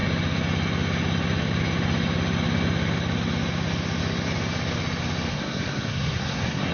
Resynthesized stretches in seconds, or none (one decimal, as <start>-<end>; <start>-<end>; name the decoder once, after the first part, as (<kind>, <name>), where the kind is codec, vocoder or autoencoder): 5.3-6.7 (codec, SNAC)